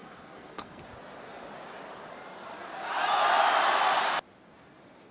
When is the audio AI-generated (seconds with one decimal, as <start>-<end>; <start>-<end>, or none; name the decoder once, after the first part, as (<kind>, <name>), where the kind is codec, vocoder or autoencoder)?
0.0-0.8 (codec, SNAC)